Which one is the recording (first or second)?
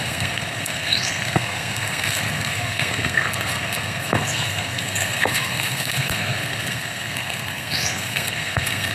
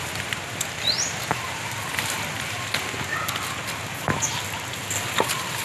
second